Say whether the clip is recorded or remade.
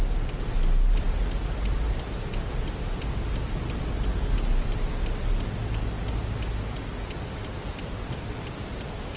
recorded